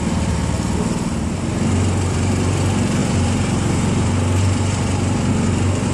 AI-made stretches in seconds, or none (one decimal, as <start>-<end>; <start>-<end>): 3.0-5.3